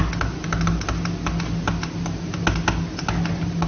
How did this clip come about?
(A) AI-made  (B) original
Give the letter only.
B